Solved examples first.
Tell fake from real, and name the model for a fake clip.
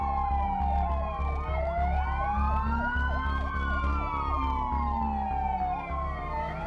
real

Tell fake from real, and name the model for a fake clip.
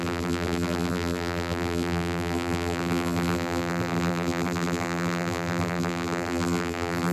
fake, vocoder, BigVGAN v2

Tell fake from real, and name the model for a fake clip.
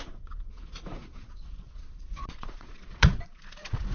fake, vocoder, Vocos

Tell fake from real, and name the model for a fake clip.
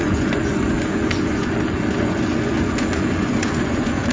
fake, vocoder, Vocos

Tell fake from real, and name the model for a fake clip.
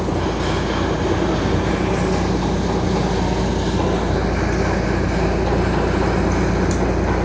real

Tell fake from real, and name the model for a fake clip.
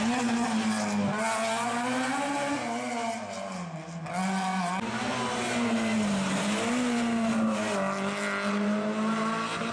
real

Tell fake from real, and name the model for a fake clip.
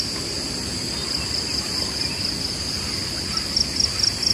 real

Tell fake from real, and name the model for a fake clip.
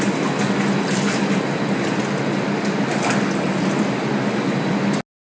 real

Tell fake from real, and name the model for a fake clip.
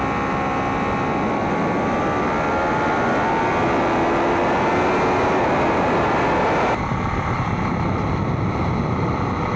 real